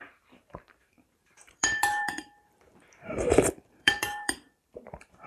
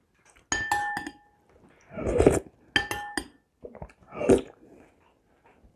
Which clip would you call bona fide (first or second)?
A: second